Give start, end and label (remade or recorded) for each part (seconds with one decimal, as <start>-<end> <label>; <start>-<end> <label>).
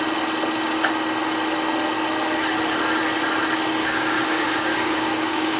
0.0-3.8 recorded; 3.8-5.6 remade